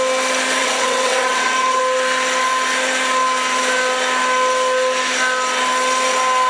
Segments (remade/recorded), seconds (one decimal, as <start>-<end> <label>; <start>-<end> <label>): 0.0-0.6 recorded; 0.6-1.8 remade; 1.8-6.5 recorded